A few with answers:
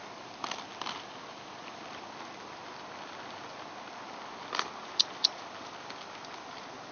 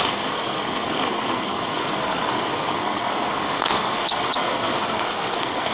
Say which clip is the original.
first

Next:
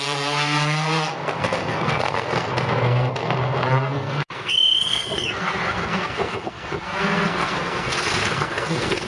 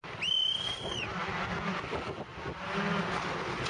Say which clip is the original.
second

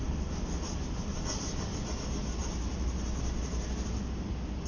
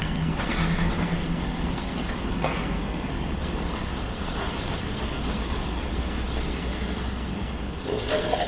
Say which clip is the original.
first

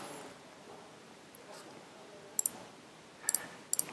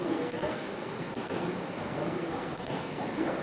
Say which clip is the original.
first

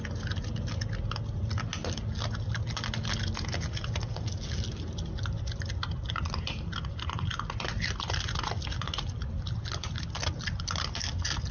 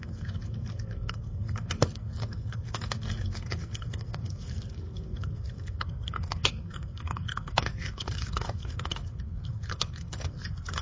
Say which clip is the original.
first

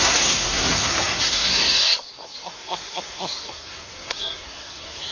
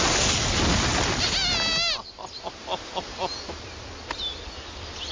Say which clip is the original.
second